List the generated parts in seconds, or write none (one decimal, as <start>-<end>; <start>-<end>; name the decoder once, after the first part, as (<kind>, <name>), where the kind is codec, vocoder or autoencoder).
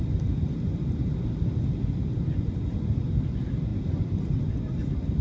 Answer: none